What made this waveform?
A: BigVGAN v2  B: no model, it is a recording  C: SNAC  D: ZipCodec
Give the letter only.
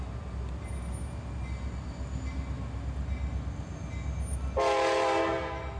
B